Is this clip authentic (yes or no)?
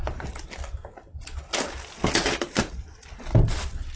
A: yes